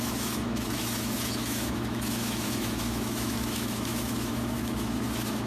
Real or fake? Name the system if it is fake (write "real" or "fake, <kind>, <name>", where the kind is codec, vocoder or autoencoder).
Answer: fake, autoencoder, DAC-VAE